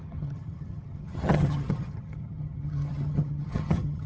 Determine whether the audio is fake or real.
fake